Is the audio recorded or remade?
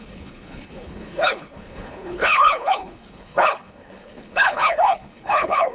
remade